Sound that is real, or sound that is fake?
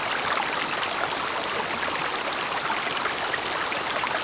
real